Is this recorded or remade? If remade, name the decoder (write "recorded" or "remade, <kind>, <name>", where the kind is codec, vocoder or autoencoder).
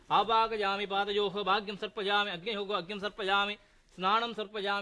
recorded